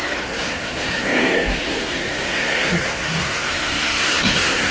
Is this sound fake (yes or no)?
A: yes